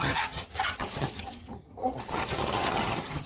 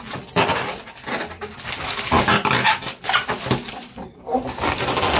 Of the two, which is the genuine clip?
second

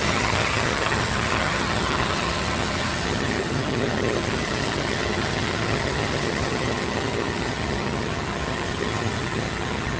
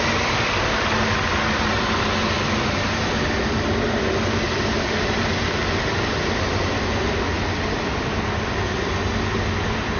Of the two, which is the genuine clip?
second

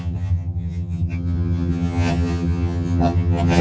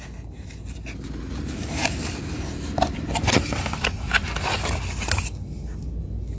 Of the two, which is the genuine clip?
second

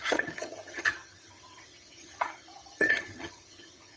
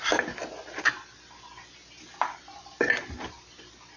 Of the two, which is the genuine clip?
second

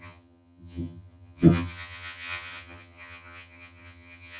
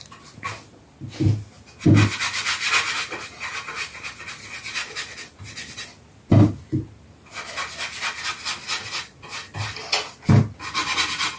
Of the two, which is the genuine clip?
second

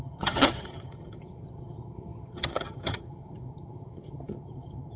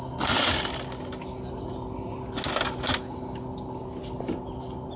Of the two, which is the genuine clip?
second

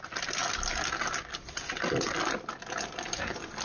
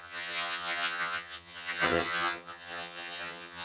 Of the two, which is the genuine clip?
first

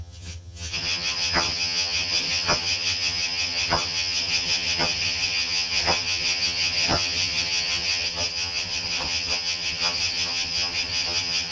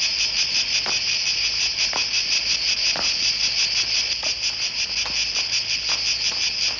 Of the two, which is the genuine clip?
second